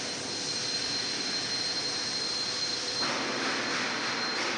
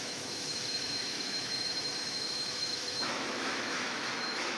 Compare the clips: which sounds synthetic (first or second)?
second